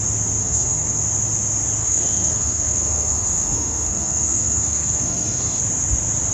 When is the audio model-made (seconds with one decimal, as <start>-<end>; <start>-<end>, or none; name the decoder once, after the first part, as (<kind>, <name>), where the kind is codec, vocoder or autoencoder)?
0.4-1.0 (codec, SNAC); 1.8-5.6

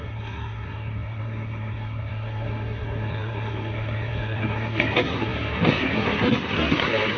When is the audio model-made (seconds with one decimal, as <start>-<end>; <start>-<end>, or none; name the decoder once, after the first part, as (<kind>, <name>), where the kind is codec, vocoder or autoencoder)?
0.0-7.2 (codec, SNAC)

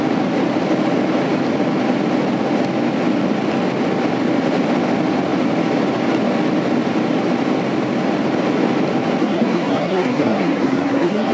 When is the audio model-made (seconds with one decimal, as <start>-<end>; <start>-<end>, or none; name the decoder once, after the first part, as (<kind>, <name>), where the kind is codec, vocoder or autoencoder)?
9.2-11.3 (codec, SNAC)

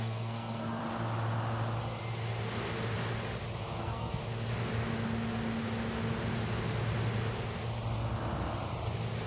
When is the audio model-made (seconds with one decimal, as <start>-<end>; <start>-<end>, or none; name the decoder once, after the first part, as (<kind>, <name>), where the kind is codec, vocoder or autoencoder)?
0.0-0.8 (codec, SNAC); 3.8-4.2

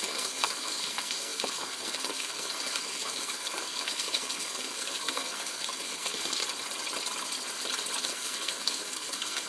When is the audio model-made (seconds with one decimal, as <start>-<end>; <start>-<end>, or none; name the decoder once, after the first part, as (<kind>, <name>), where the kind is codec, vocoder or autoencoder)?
0.0-6.4 (codec, SNAC); 8.0-9.5

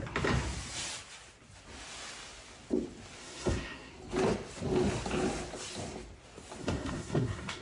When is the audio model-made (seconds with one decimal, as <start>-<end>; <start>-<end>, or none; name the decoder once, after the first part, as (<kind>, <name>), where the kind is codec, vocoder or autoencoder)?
3.2-3.9 (codec, SNAC); 6.6-7.6

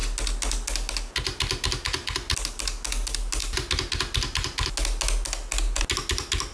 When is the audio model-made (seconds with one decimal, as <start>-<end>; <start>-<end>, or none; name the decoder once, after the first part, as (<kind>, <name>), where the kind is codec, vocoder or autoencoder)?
none